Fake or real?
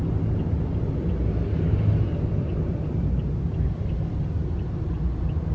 real